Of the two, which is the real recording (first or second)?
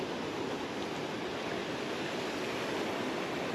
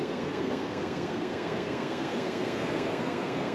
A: first